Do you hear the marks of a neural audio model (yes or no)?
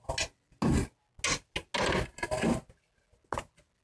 no